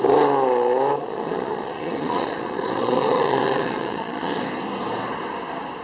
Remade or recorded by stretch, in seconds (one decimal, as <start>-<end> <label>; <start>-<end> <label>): 0.0-0.9 recorded; 0.9-4.4 remade; 4.4-5.8 recorded